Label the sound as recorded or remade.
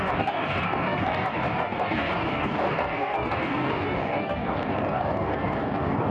remade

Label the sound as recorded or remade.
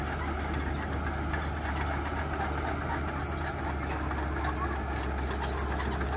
recorded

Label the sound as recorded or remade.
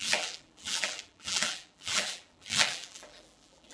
remade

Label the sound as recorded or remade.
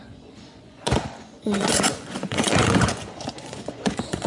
remade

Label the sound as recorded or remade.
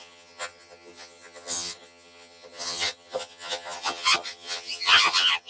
remade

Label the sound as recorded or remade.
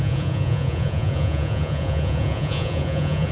remade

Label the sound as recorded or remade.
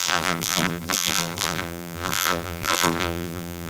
remade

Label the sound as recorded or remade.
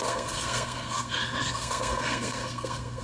remade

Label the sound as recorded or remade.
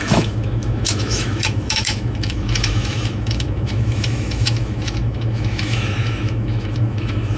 remade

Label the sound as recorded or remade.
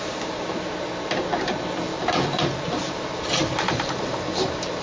remade